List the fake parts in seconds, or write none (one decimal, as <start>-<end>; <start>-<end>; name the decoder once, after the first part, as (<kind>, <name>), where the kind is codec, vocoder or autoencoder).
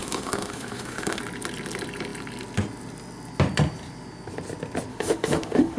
0.0-1.2 (autoencoder, DAC-VAE); 4.9-5.8